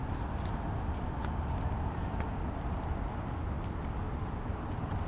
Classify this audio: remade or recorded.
recorded